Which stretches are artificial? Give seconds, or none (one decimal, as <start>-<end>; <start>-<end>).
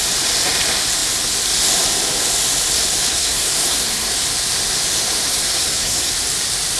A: 3.1-4.1; 5.3-6.1